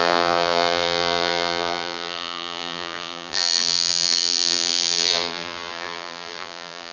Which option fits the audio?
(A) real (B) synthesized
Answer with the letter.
B